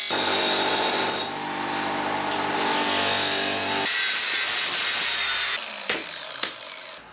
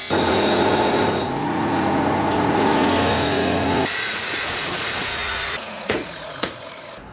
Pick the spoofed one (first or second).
second